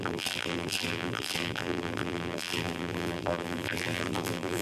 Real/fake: fake